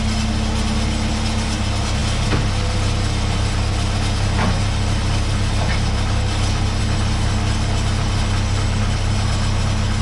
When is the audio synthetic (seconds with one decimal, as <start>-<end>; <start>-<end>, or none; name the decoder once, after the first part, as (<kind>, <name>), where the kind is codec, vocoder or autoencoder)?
none